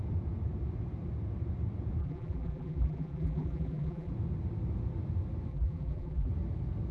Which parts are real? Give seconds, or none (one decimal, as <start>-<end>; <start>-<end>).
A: 0.0-2.0; 4.1-5.5; 6.3-6.9